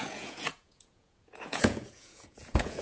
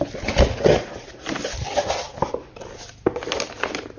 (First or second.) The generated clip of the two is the first